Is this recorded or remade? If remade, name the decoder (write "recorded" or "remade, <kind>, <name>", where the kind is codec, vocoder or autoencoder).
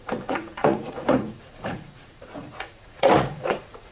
remade, vocoder, Vocos